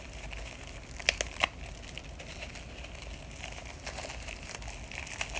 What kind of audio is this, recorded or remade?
recorded